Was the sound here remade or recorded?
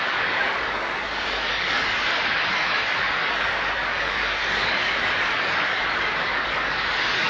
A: remade